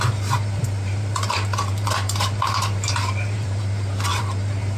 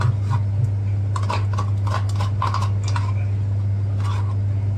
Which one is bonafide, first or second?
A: second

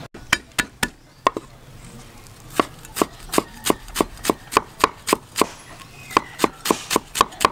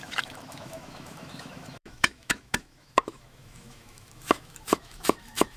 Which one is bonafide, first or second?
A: first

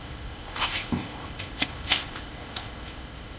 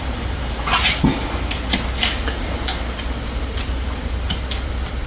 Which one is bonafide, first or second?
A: second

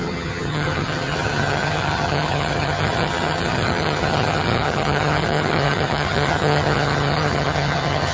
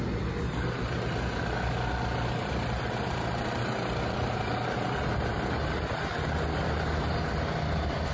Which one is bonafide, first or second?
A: second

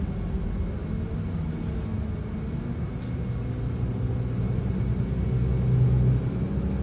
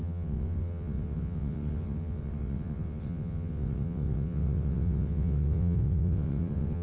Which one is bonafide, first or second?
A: first